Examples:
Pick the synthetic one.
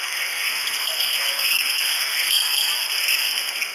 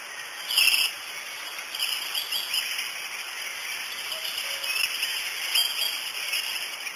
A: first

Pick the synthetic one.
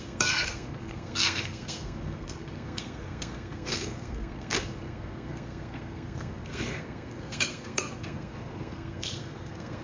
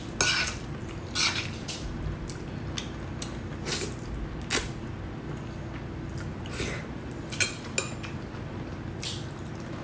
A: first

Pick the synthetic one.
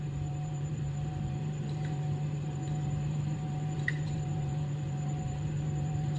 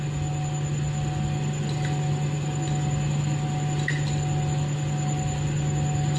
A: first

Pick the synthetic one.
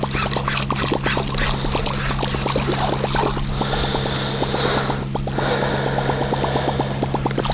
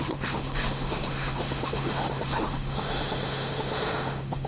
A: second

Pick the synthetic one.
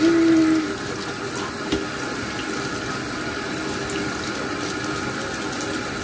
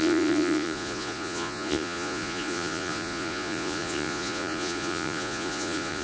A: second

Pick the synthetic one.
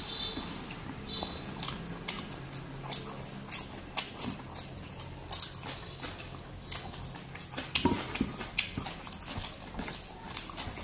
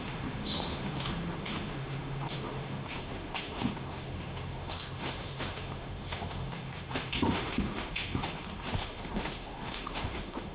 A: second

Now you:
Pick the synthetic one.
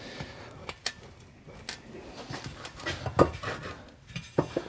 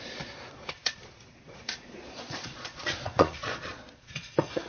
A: second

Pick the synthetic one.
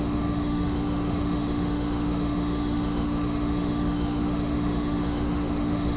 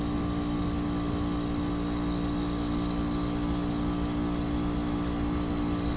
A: first